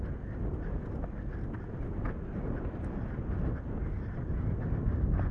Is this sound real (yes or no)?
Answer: yes